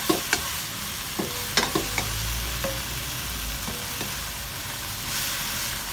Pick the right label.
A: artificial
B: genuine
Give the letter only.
B